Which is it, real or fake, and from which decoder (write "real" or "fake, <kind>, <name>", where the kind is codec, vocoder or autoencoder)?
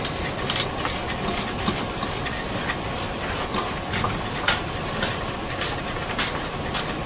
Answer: real